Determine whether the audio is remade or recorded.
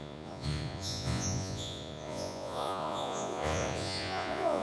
remade